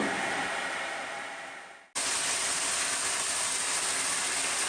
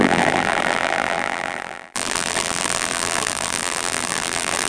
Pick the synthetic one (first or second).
second